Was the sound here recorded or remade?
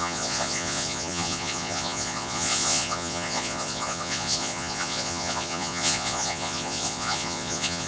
remade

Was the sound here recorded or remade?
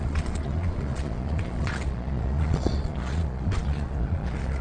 remade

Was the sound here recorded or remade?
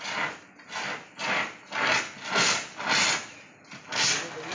recorded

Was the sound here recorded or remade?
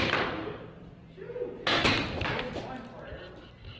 recorded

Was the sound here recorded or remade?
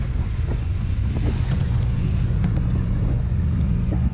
remade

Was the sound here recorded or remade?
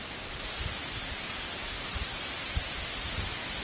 recorded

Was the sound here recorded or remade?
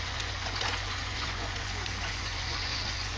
remade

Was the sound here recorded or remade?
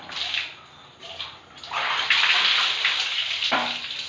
recorded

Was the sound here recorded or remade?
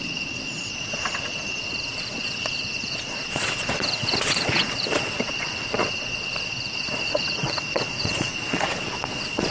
remade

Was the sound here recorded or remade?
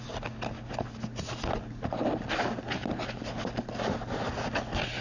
recorded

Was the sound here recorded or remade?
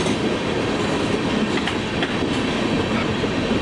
recorded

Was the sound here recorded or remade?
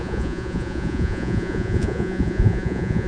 remade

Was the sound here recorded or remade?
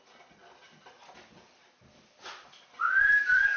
recorded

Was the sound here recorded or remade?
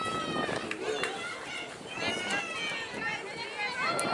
recorded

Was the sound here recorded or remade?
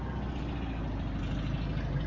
recorded